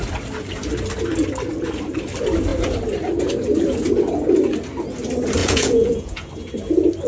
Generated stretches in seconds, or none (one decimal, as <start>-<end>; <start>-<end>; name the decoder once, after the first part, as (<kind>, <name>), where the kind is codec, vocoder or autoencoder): 5.4-6.3 (vocoder, Vocos)